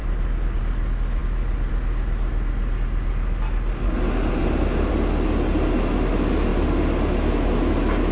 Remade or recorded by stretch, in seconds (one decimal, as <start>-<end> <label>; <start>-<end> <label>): 0.0-8.1 recorded